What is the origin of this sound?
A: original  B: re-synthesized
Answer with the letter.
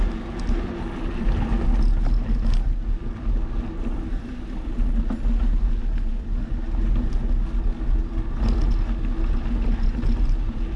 A